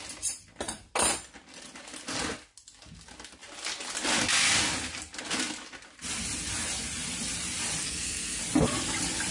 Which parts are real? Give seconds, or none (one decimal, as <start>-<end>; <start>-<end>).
0.0-7.8; 8.4-9.3